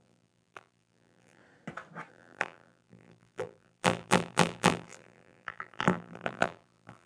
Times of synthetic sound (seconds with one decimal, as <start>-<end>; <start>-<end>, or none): 0.0-1.4; 2.1-7.1

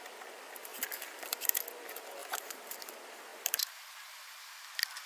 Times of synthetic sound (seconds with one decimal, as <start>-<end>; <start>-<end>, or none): 0.7-1.6; 2.2-2.9; 3.3-4.6

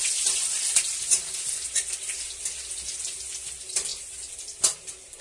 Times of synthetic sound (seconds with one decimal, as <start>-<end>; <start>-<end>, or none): none

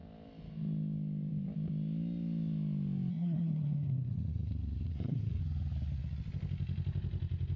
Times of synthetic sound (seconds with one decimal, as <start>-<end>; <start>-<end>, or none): 3.1-5.4